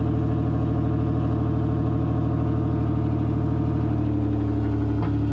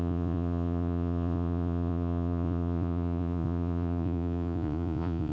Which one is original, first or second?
first